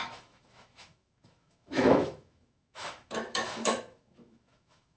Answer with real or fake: fake